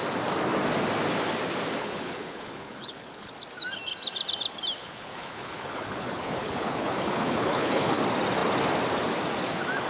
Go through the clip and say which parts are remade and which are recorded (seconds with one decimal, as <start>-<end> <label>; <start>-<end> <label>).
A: 0.0-1.8 recorded; 1.8-3.3 remade; 3.3-4.8 recorded; 4.8-8.0 remade; 8.0-9.9 recorded